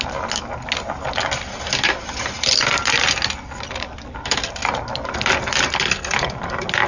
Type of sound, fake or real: real